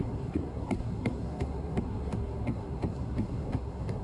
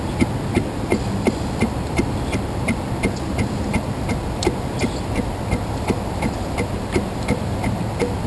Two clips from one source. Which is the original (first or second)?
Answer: second